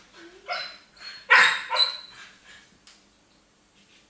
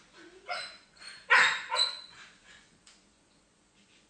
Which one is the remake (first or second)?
second